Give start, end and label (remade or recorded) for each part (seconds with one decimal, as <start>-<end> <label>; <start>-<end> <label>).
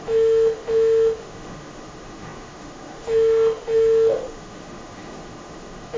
0.0-6.0 remade